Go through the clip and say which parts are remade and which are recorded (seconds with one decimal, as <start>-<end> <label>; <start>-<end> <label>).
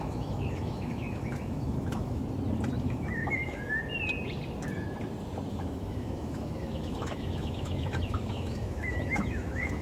0.0-2.2 remade; 2.2-2.8 recorded; 2.8-3.8 remade; 3.8-5.5 recorded; 5.5-9.8 remade